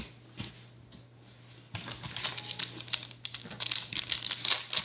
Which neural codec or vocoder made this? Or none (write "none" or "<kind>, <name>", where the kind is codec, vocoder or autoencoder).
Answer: none